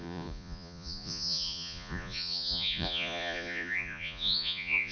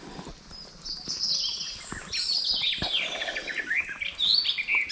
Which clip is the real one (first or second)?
second